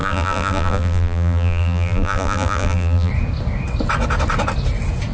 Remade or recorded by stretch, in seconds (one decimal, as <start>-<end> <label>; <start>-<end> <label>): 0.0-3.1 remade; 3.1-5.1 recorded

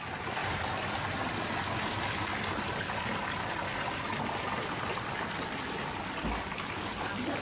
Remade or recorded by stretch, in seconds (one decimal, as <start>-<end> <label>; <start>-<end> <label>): 0.0-7.4 recorded

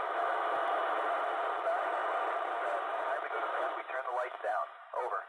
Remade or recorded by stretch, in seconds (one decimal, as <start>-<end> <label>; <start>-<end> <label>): 0.0-2.0 recorded; 2.0-5.3 remade

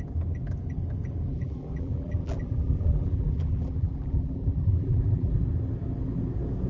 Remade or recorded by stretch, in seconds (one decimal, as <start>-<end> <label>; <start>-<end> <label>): 0.0-1.3 recorded; 1.3-5.3 remade; 5.3-6.7 recorded

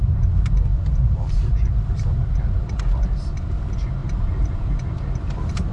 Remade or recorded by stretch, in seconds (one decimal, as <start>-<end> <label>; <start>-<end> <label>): 0.0-0.7 recorded; 0.7-2.8 remade; 2.8-4.0 recorded; 4.0-5.7 remade

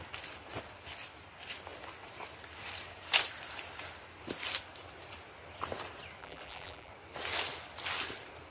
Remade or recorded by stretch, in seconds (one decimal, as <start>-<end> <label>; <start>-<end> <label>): 0.0-6.2 recorded; 6.2-6.9 remade; 6.9-8.5 recorded

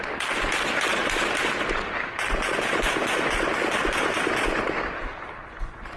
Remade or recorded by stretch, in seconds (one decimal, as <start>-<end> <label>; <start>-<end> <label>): 0.0-6.0 recorded